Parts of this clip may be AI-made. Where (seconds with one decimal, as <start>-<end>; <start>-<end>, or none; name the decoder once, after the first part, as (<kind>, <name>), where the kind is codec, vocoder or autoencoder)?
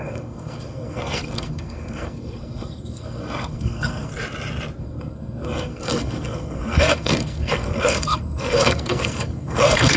0.0-4.1 (codec, SNAC); 4.8-10.0